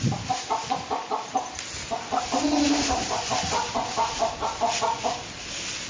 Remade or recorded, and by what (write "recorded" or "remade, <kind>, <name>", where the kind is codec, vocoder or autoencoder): recorded